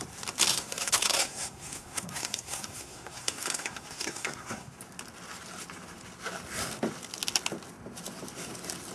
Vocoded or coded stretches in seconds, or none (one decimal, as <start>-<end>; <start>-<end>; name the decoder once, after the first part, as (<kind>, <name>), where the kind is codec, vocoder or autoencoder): 0.5-4.8 (codec, SNAC)